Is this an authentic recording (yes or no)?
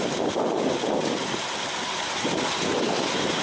yes